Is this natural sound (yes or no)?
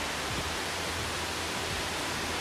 no